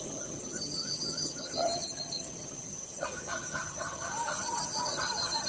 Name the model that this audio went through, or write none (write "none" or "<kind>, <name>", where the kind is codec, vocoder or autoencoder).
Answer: vocoder, HiFi-GAN